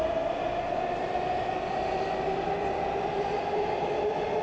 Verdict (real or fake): real